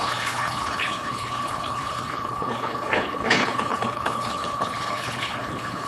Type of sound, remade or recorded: remade